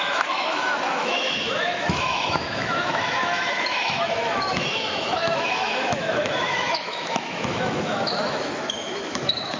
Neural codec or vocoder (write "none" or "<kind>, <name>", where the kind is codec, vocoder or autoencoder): autoencoder, DAC-VAE